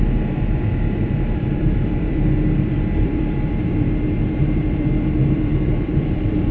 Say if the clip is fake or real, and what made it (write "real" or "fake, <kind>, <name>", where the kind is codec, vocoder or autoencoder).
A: fake, vocoder, BigVGAN v2